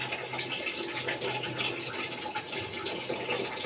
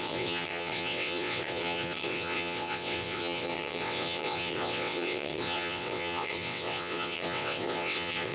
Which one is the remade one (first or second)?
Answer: second